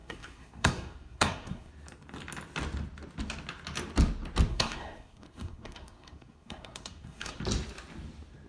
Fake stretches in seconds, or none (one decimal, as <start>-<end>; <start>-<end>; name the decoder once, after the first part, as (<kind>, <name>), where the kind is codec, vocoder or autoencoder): 0.0-1.7 (codec, SNAC); 4.5-7.4